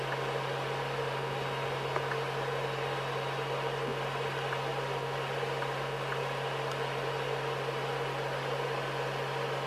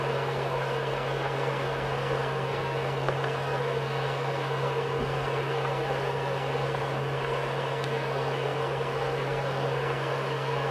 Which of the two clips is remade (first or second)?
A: second